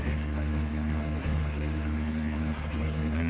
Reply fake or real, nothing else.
fake